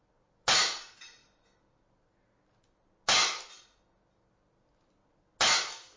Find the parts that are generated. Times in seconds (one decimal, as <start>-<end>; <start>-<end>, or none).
none